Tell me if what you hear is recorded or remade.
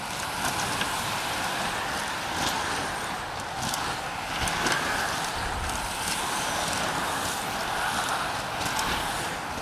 recorded